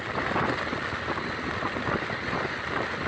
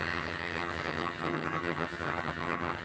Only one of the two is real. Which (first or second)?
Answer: first